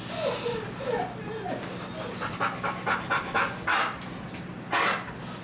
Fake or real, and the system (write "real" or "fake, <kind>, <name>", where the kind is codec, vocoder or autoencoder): real